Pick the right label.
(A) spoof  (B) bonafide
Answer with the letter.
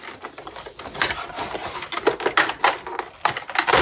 B